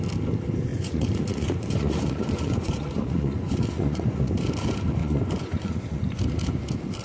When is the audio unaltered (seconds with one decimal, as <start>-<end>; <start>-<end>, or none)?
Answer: 0.0-0.7; 4.3-5.0; 6.0-7.0